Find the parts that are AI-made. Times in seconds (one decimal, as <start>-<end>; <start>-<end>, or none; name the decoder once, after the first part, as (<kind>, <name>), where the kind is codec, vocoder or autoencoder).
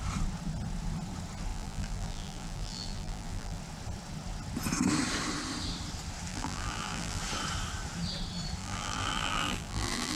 1.5-3.6 (vocoder, BigVGAN v2); 6.3-7.2; 8.6-10.2